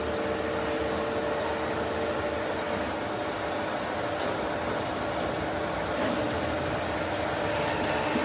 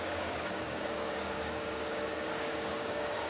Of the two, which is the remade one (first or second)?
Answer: second